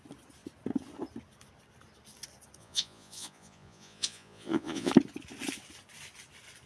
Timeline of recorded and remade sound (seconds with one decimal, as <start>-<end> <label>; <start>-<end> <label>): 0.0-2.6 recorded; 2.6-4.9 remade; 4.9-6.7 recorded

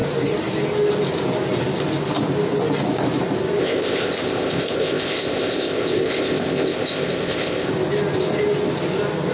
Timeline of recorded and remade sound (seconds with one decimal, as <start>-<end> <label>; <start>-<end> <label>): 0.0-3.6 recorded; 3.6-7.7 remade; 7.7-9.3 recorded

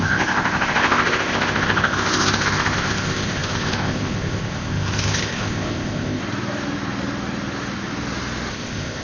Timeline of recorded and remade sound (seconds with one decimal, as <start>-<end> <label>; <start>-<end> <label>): 0.0-6.2 remade; 6.2-8.5 recorded; 8.5-9.0 remade